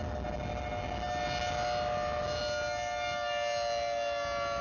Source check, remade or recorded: recorded